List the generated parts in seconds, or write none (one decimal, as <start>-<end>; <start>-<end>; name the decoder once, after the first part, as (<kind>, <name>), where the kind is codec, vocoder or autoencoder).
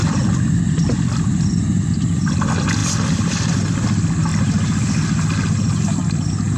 none